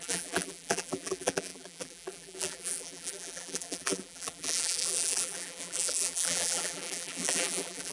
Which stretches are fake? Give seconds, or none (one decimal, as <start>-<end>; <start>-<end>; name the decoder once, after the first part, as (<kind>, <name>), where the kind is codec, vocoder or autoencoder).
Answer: 0.0-7.9 (vocoder, BigVGAN v2)